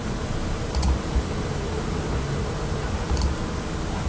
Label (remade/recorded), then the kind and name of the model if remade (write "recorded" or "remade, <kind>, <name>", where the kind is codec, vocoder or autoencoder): recorded